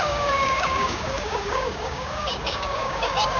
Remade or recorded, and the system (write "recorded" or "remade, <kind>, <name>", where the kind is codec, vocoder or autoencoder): remade, codec, DAC